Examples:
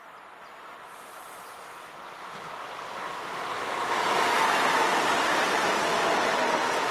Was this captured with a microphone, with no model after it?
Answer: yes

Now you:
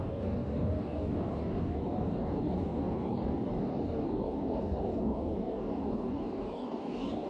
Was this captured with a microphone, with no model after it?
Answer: no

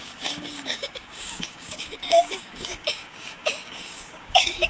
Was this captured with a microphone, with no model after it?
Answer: no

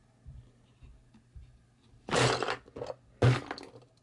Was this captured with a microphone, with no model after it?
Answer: yes